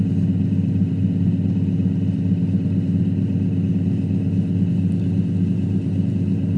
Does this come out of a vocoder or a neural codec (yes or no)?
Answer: no